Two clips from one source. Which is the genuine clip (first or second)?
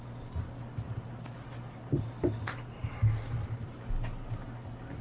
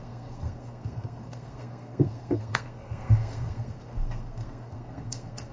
first